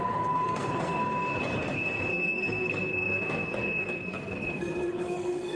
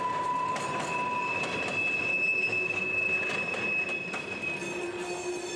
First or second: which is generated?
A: first